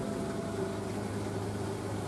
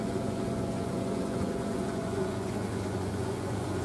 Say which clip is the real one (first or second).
first